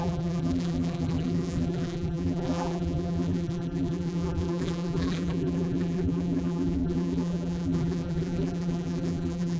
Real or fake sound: fake